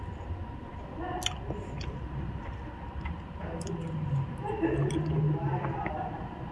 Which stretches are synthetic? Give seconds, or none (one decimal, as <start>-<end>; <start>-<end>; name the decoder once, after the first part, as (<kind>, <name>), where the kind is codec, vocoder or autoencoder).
none